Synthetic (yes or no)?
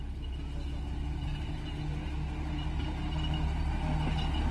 no